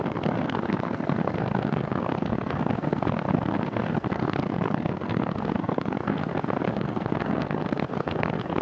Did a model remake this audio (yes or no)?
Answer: yes